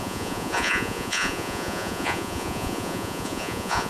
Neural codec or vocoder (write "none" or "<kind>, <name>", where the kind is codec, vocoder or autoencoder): vocoder, Vocos